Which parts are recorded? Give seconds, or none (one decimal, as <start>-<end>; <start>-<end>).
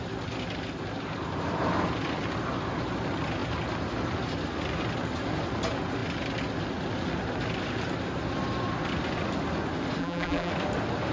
0.0-10.0; 10.5-11.1